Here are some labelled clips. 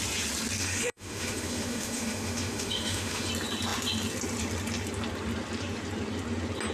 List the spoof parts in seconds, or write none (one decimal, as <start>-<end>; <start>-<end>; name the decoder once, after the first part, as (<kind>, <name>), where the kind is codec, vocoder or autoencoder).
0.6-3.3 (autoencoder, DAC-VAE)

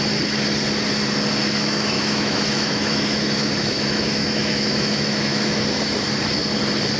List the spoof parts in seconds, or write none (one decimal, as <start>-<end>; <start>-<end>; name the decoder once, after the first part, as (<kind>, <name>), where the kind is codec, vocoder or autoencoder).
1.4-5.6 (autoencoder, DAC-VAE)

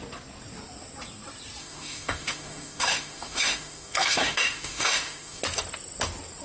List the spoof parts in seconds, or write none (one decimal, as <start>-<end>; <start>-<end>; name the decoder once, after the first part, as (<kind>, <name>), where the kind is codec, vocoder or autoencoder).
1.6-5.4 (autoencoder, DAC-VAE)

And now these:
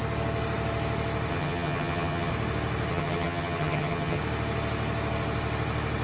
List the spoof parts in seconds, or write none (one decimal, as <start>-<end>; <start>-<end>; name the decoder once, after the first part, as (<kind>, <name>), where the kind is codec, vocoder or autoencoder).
1.3-2.3 (vocoder, HiFi-GAN); 2.9-4.2

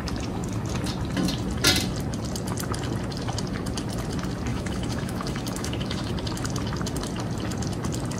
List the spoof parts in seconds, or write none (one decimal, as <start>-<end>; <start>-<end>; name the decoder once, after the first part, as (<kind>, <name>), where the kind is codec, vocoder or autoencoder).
4.5-6.1 (autoencoder, DAC-VAE)

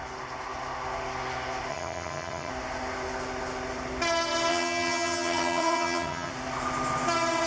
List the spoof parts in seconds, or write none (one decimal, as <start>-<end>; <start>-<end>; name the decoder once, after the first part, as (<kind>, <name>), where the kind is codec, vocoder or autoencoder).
1.7-2.5 (vocoder, HiFi-GAN); 4.5-6.3

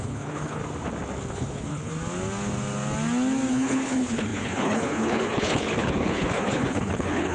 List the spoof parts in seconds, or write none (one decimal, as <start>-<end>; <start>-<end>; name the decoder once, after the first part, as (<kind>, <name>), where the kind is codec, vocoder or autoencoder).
0.0-0.6 (codec, HILCodec); 1.3-1.9; 3.5-7.3